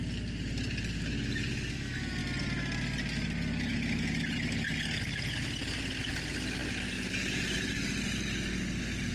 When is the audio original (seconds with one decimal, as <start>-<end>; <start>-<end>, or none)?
0.0-9.1